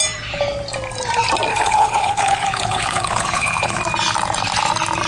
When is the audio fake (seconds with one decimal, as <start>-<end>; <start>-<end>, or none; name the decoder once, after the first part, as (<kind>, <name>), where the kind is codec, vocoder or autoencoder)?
1.5-3.8 (codec, HILCodec)